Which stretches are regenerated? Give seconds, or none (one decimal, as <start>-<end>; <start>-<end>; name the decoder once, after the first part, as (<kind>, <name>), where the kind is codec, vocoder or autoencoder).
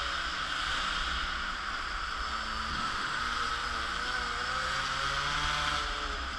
2.7-3.2 (autoencoder, DAC-VAE)